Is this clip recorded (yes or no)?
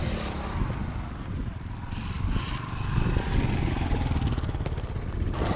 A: yes